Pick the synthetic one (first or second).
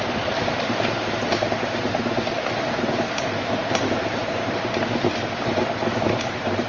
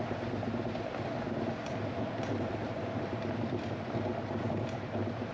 first